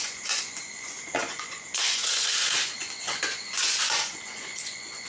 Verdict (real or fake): fake